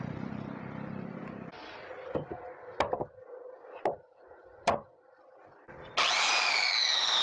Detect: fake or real real